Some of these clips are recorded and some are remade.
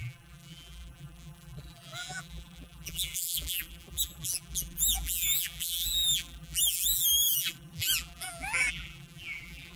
remade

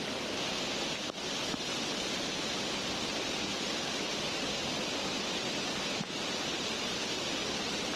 recorded